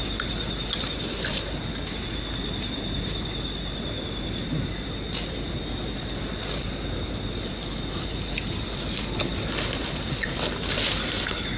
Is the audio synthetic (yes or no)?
no